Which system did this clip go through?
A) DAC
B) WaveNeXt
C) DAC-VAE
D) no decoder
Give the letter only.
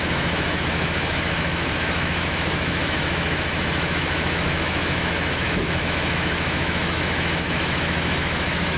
C